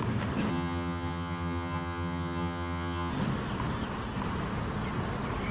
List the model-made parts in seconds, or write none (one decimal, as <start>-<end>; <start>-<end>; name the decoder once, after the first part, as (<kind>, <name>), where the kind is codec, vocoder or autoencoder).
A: 0.5-3.1 (vocoder, HiFi-GAN)